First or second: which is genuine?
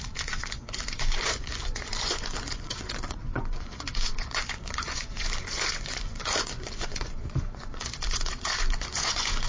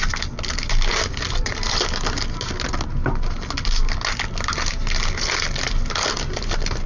second